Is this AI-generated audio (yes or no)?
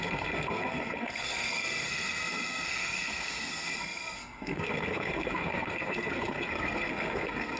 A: yes